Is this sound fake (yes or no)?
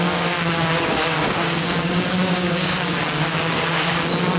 yes